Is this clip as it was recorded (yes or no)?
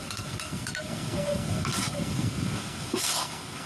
no